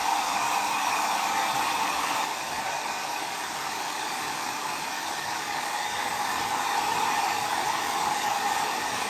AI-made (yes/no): yes